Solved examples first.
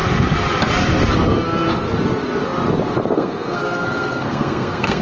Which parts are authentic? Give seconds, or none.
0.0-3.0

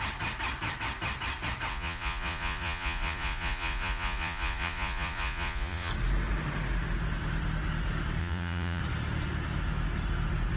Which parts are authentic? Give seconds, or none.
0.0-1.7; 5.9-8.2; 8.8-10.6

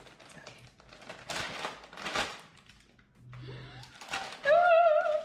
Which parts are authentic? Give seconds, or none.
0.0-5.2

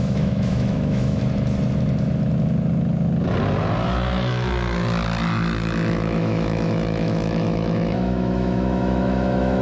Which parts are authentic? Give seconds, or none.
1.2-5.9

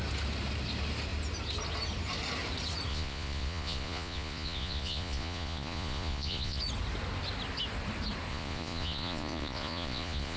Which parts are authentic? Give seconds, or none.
0.0-2.9; 6.6-8.3